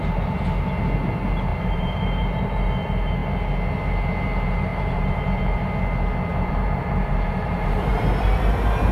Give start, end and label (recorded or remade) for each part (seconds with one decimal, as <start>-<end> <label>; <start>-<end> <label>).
0.0-1.5 recorded; 1.5-2.7 remade; 2.7-4.7 recorded; 4.7-5.6 remade; 5.6-6.3 recorded; 6.3-7.9 remade; 7.9-8.9 recorded